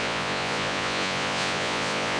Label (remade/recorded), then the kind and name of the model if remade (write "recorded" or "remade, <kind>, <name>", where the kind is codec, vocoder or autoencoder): remade, vocoder, Vocos